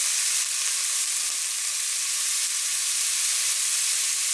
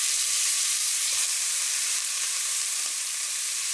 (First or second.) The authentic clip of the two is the first